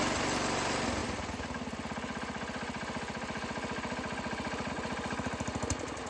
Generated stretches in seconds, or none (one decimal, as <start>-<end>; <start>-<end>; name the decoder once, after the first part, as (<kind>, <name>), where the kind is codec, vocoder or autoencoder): none